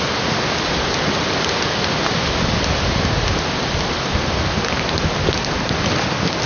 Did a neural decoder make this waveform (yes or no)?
no